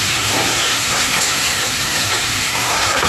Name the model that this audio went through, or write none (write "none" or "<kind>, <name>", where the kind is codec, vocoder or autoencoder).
codec, SNAC